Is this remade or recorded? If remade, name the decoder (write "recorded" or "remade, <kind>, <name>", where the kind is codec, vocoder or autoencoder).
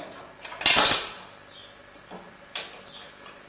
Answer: recorded